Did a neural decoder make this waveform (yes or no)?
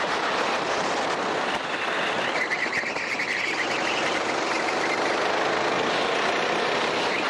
no